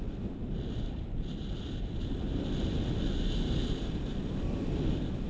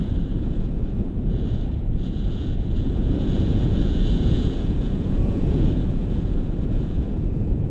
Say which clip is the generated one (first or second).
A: second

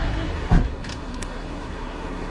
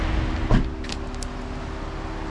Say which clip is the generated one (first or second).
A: first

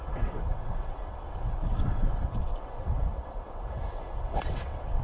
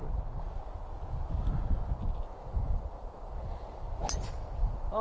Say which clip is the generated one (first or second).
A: first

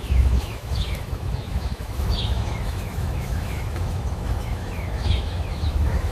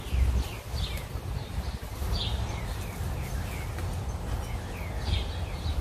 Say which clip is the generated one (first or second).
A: first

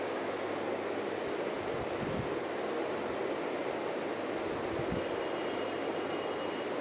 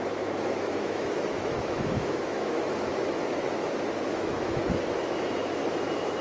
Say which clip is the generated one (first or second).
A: second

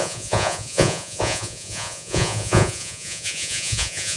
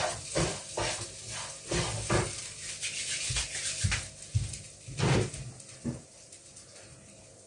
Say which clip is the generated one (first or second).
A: first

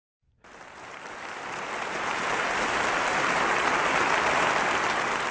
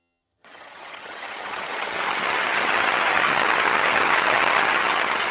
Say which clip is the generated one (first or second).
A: second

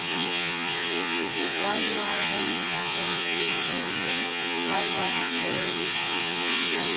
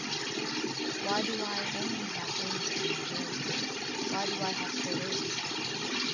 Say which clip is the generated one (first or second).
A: first